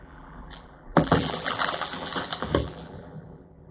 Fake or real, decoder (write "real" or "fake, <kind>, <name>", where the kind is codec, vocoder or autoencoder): fake, vocoder, BigVGAN v2